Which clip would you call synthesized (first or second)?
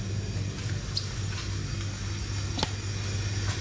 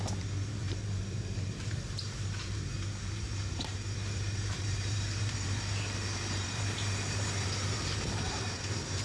second